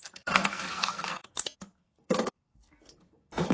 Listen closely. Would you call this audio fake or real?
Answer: fake